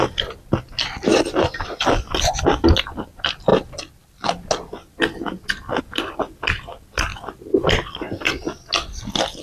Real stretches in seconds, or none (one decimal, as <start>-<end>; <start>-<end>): 0.0-1.1; 1.8-7.1; 8.3-9.4